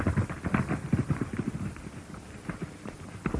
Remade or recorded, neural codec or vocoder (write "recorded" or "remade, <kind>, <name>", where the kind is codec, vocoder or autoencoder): recorded